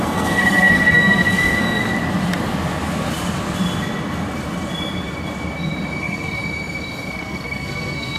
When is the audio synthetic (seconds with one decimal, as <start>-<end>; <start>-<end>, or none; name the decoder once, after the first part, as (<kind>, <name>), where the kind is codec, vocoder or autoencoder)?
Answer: 0.0-1.8 (codec, SNAC); 6.0-6.4; 7.1-8.2